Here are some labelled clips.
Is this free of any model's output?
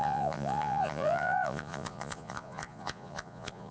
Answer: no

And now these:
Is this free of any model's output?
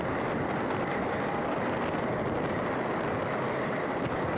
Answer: yes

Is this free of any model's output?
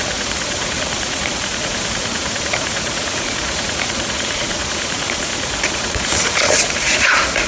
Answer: no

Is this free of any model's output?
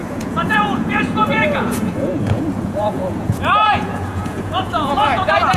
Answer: no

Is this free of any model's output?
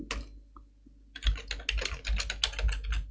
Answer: yes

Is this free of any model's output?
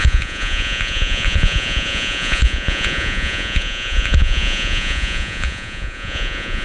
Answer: no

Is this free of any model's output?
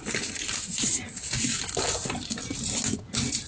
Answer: yes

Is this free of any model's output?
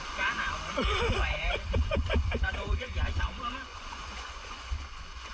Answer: no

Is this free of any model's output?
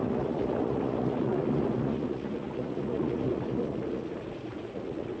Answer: no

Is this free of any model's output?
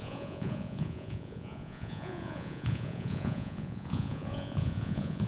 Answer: no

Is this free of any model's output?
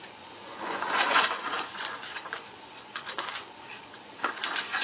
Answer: no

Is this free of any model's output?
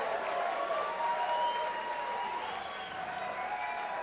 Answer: yes